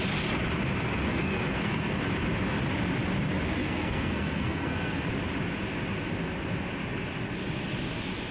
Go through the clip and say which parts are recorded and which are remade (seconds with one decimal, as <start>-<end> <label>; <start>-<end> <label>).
0.0-1.1 recorded; 1.1-2.0 remade; 2.0-3.6 recorded; 3.6-5.1 remade; 5.1-8.3 recorded